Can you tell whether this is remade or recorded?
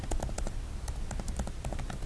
recorded